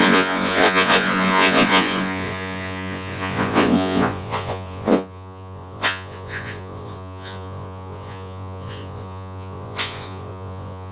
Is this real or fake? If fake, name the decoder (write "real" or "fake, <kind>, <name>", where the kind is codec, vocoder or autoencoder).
fake, vocoder, Vocos